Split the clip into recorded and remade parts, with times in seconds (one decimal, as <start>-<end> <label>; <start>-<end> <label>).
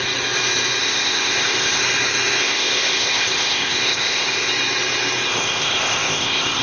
0.0-0.8 recorded; 0.8-1.8 remade; 1.8-2.4 recorded; 2.4-4.5 remade; 4.5-5.3 recorded; 5.3-6.6 remade